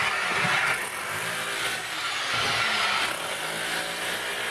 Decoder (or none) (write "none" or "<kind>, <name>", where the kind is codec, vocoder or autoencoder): none